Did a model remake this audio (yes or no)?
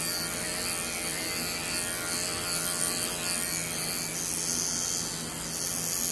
no